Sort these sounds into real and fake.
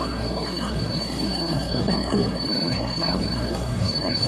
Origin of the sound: fake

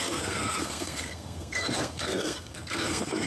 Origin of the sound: fake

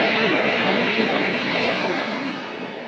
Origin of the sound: fake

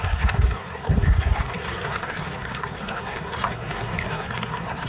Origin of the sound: fake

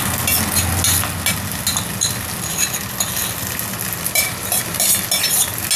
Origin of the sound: real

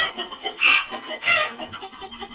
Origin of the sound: fake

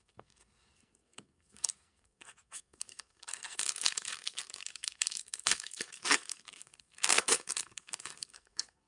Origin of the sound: fake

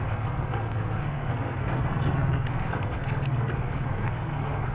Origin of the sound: fake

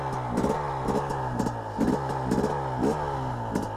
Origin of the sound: real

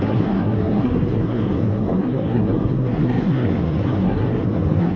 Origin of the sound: fake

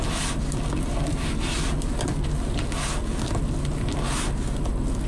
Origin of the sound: real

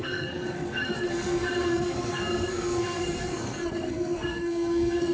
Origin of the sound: fake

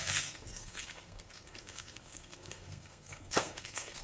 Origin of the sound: fake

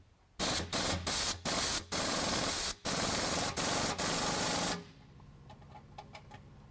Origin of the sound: real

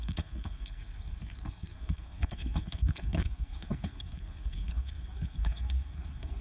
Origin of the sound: fake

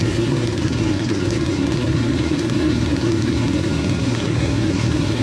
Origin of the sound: fake